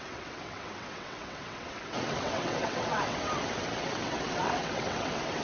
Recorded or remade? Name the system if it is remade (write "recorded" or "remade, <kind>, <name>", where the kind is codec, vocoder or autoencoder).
remade, vocoder, WaveNeXt